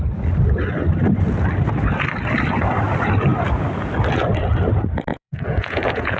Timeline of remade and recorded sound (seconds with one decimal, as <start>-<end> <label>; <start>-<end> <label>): 0.0-5.1 recorded; 5.1-6.2 remade